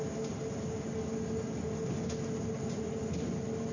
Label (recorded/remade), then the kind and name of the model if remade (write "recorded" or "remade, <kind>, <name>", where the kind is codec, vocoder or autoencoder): recorded